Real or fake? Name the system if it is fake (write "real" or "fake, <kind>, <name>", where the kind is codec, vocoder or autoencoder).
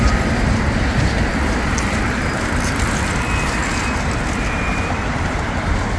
real